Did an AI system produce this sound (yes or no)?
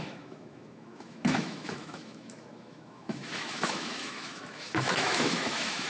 yes